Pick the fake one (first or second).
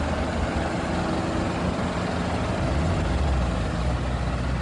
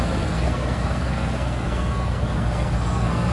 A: second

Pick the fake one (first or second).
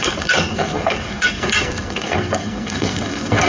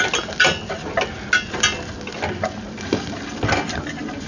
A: first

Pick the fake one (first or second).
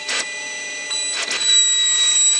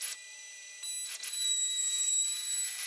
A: second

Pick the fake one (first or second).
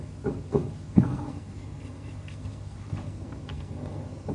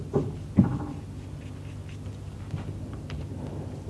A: first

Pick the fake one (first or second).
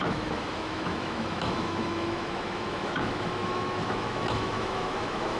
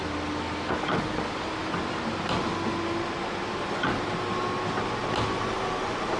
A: first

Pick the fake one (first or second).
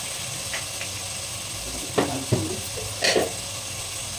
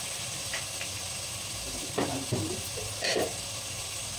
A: second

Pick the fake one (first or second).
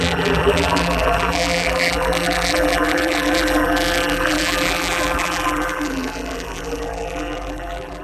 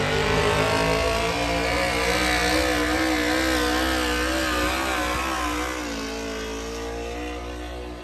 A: first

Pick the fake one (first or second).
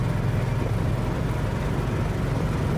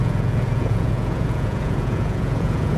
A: second